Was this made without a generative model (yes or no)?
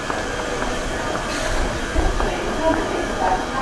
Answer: yes